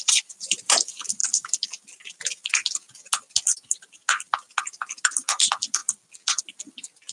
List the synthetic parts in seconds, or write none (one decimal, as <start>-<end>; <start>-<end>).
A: none